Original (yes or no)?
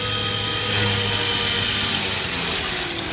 yes